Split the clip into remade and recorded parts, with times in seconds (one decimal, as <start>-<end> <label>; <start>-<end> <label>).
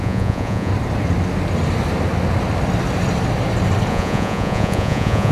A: 0.0-0.7 remade; 0.7-3.9 recorded; 3.9-5.3 remade